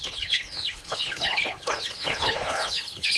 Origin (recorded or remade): remade